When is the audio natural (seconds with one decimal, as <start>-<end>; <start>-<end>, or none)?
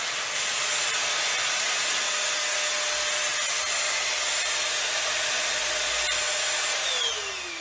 0.0-7.6